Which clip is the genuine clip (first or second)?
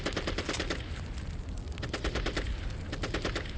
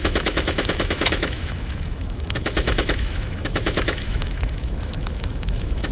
first